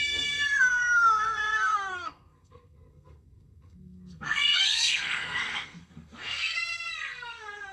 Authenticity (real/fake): fake